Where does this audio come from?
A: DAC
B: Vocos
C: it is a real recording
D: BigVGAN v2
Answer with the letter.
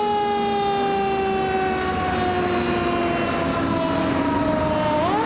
C